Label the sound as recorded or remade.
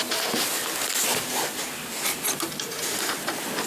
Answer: recorded